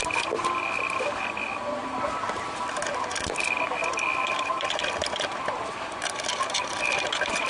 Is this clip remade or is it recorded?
remade